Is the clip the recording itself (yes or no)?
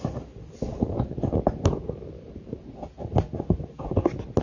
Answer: yes